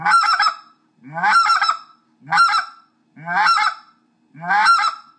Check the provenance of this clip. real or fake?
real